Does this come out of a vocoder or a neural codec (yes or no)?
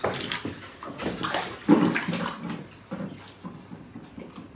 no